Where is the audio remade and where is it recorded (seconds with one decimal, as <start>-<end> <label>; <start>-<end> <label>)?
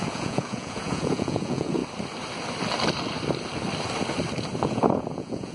0.0-1.8 remade; 1.8-4.6 recorded; 4.6-5.5 remade